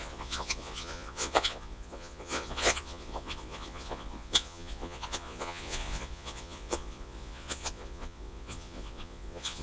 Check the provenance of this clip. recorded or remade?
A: remade